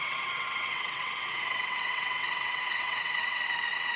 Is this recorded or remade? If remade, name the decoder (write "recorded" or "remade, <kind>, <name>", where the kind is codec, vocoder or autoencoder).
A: remade, vocoder, WaveNeXt